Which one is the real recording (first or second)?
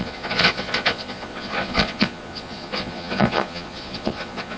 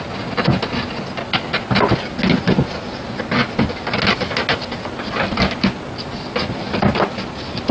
second